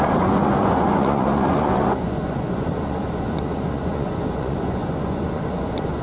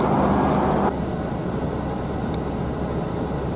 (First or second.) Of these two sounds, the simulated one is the first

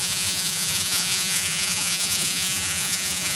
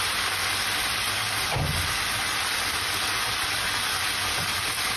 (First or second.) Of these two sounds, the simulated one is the first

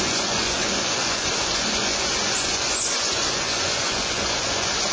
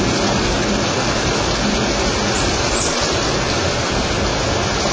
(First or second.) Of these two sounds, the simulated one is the first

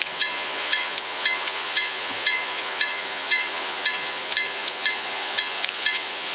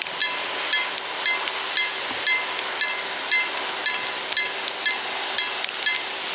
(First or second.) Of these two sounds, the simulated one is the first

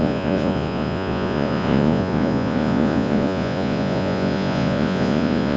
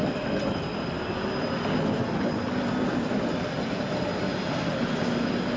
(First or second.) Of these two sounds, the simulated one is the first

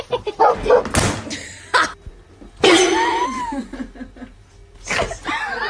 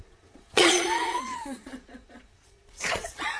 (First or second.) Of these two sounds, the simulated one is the second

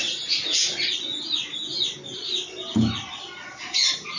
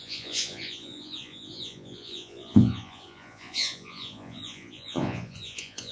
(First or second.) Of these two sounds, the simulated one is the second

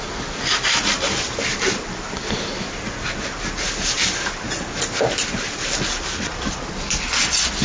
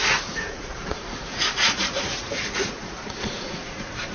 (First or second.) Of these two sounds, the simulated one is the second